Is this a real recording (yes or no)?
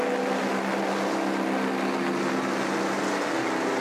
yes